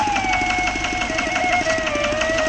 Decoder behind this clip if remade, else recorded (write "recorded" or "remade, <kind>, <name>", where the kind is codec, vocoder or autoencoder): recorded